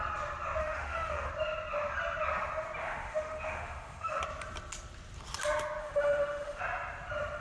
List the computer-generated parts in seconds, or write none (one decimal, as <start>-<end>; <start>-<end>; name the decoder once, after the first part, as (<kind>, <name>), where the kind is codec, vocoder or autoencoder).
0.6-1.3 (autoencoder, DAC-VAE); 2.8-4.2; 5.8-6.6